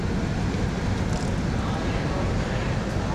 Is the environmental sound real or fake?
real